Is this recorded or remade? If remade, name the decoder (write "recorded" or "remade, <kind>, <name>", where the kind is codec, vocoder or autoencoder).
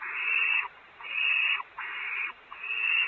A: recorded